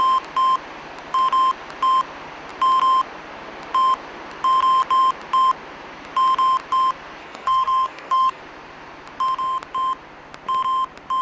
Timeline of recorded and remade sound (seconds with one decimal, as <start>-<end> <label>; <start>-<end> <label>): 0.0-7.2 recorded; 7.2-8.4 remade; 8.4-11.2 recorded